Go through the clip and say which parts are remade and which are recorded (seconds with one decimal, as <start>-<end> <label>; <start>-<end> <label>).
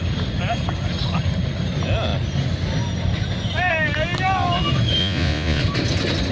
0.0-5.0 recorded; 5.0-5.6 remade; 5.6-6.3 recorded